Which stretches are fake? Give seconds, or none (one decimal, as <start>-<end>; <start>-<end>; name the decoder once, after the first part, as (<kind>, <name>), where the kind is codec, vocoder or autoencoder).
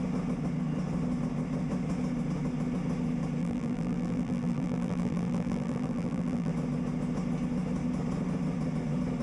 3.4-6.5 (vocoder, BigVGAN v2)